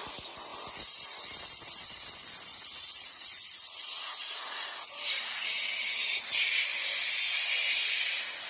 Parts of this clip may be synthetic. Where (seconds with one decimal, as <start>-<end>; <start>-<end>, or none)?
2.5-4.1